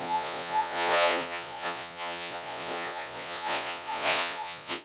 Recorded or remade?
remade